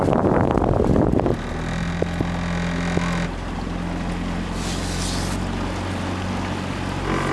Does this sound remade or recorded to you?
recorded